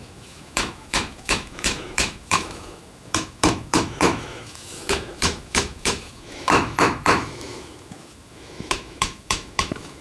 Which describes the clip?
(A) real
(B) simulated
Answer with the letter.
B